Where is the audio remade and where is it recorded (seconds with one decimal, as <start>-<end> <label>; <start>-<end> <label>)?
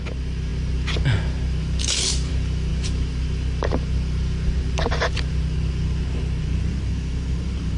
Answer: 0.0-7.8 recorded